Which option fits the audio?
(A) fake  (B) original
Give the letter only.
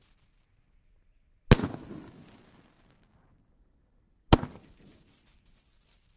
B